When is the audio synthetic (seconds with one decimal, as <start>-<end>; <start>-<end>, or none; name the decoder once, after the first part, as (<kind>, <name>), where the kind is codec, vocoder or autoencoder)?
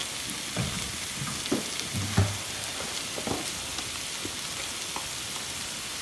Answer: none